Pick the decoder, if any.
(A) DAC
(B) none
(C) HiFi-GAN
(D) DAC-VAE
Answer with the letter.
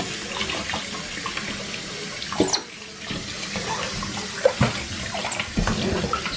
B